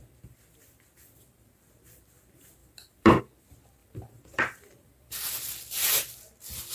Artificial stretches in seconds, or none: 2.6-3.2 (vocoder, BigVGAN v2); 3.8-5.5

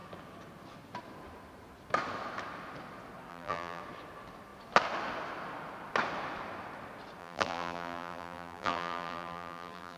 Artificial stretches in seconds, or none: 3.3-3.8 (vocoder, BigVGAN v2); 7.2-10.0

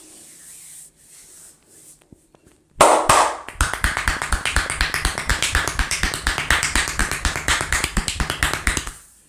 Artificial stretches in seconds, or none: 5.3-6.1 (vocoder, BigVGAN v2); 7.0-8.1

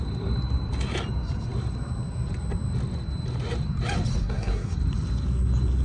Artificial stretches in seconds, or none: 4.2-4.8 (codec, SNAC)

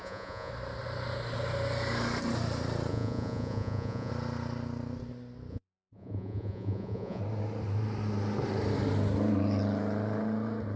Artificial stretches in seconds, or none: 0.0-0.5 (vocoder, Vocos); 2.9-4.1; 5.5-7.2

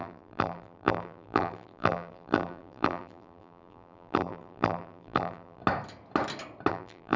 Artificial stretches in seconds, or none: 0.0-5.6 (vocoder, BigVGAN v2); 6.7-7.2

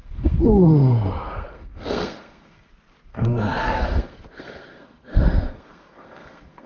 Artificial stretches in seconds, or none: 0.0-2.7 (codec, SNAC); 3.1-6.7